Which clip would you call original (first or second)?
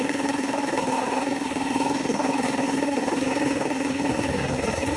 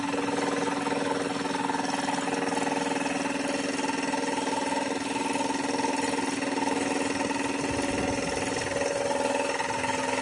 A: second